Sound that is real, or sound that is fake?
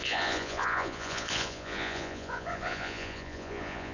fake